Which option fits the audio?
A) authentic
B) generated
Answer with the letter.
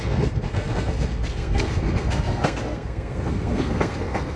B